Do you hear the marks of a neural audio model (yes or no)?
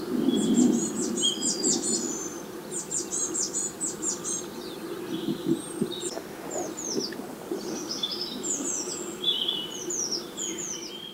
no